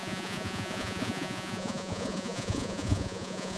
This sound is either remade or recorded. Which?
remade